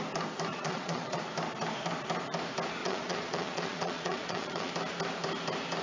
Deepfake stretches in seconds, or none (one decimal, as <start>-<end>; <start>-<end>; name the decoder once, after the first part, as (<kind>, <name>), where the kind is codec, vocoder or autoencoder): 0.5-1.2 (vocoder, Vocos); 2.8-4.7